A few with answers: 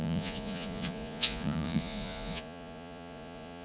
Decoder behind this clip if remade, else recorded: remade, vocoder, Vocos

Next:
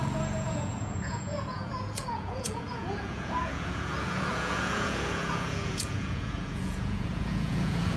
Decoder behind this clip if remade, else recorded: remade, vocoder, Vocos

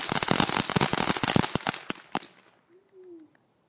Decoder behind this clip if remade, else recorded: recorded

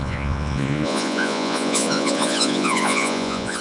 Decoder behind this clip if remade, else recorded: remade, vocoder, Vocos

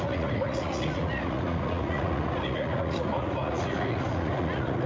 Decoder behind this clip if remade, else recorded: remade, vocoder, Vocos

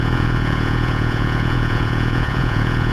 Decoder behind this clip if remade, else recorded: remade, vocoder, Vocos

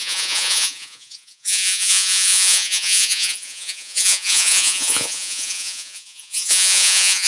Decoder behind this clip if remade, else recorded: remade, vocoder, Vocos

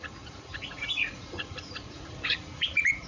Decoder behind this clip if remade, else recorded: remade, vocoder, Vocos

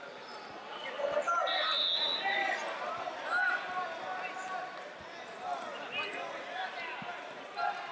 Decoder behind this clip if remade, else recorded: recorded